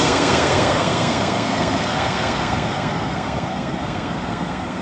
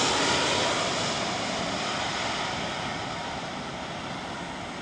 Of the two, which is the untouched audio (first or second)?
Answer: second